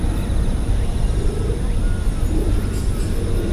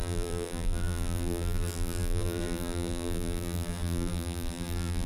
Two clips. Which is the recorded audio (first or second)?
first